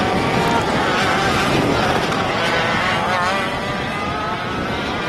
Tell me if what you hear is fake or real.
real